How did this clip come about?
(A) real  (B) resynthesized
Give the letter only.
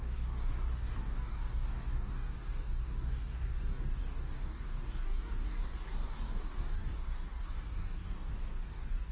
B